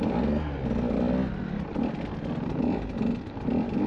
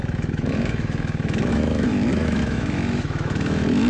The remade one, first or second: second